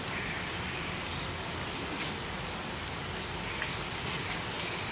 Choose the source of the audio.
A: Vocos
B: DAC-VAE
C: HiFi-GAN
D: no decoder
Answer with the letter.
D